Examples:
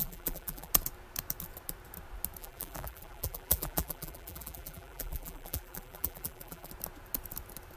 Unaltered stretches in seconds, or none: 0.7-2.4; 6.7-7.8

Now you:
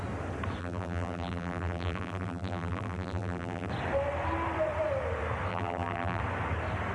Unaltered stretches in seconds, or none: 0.0-0.6; 3.7-5.5; 6.2-6.9

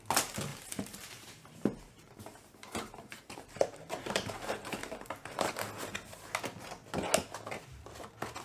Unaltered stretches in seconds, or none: 0.0-0.5; 5.5-8.4